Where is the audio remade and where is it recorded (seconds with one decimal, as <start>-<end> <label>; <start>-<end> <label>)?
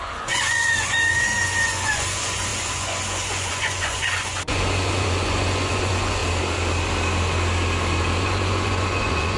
0.0-6.2 remade; 6.2-8.2 recorded; 8.2-9.4 remade